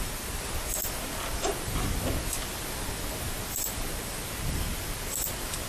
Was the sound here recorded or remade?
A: recorded